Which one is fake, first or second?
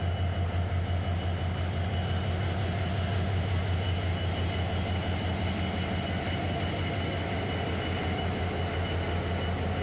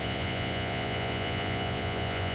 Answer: second